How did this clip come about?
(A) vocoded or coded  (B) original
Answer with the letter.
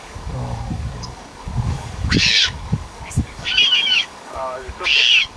A